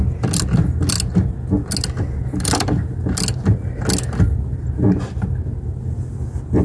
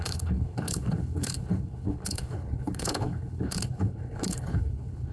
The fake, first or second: second